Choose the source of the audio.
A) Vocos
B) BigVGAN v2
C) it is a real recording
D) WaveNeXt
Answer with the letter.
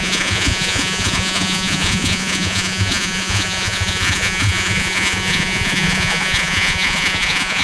A